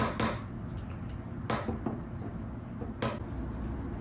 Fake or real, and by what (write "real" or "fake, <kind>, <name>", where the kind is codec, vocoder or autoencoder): real